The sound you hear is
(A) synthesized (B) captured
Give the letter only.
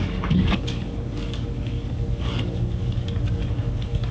A